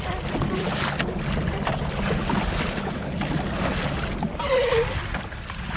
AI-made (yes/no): no